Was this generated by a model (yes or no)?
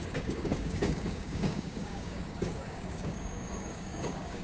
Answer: yes